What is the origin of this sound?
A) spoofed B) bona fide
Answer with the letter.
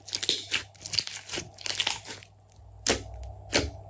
B